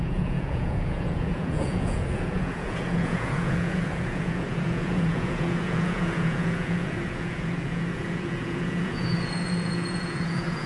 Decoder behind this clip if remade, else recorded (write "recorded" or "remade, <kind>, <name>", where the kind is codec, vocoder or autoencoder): remade, vocoder, Vocos